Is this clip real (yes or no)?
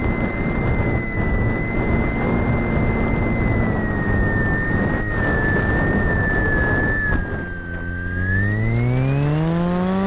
yes